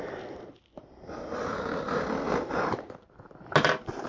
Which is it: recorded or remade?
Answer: recorded